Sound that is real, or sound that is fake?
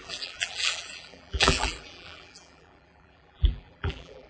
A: fake